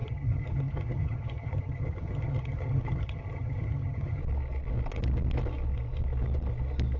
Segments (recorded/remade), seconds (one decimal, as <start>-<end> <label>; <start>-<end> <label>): 0.0-4.2 remade; 4.2-7.0 recorded

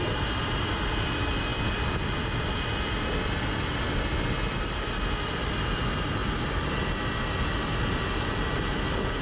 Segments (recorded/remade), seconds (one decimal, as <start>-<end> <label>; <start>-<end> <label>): 0.0-9.2 recorded

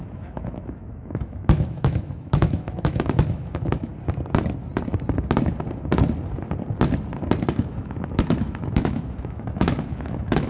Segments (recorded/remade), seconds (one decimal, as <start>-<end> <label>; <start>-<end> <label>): 0.0-3.9 remade; 3.9-7.5 recorded; 7.5-10.5 remade

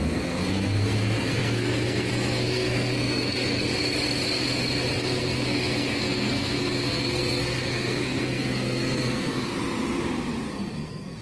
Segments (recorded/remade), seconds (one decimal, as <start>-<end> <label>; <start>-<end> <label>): 0.0-3.7 remade; 3.7-5.0 recorded; 5.0-9.5 remade; 9.5-10.5 recorded; 10.5-11.2 remade

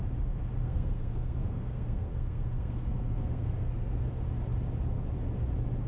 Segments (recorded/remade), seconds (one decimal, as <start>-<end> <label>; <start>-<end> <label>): 0.0-0.6 recorded; 0.6-4.1 remade; 4.1-5.9 recorded

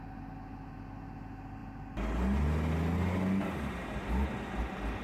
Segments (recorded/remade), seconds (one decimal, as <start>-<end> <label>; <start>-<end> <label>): 0.0-5.0 recorded